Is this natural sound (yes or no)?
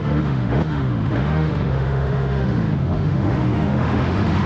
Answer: no